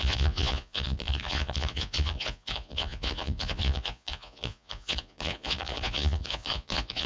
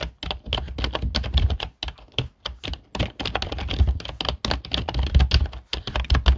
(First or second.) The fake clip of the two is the first